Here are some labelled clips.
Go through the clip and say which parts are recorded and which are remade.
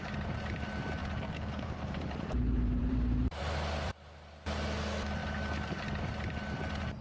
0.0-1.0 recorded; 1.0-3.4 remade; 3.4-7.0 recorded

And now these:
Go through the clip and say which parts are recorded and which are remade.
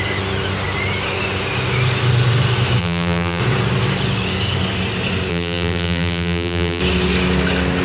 0.0-2.8 recorded; 2.8-3.4 remade; 3.4-5.3 recorded; 5.3-6.8 remade; 6.8-7.8 recorded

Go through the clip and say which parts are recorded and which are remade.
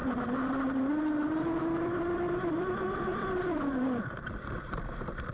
0.0-1.8 recorded; 1.8-5.3 remade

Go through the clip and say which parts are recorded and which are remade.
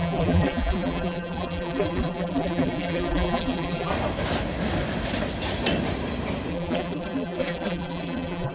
0.0-3.9 remade; 3.9-6.5 recorded; 6.5-8.5 remade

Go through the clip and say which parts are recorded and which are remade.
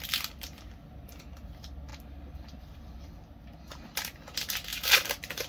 0.0-1.9 recorded; 1.9-3.2 remade; 3.2-5.5 recorded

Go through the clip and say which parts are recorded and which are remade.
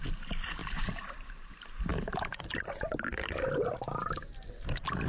0.0-0.6 recorded; 0.6-1.5 remade; 1.5-1.9 recorded; 1.9-2.6 remade; 2.6-5.1 recorded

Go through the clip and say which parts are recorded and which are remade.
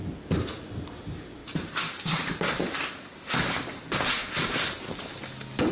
0.0-1.4 recorded; 1.4-4.8 remade; 4.8-5.7 recorded